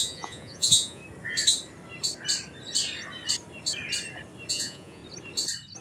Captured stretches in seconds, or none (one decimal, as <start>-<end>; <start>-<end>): 1.0-4.5; 5.0-5.8